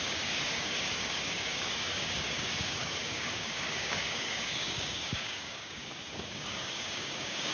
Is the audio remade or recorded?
remade